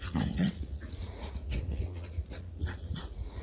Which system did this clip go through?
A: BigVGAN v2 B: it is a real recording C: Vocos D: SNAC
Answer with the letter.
C